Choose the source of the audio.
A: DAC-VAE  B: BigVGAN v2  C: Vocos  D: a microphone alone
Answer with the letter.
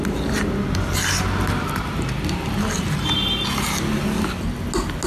D